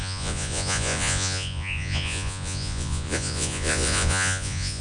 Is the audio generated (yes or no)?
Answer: yes